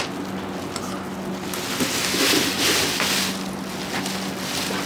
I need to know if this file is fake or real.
real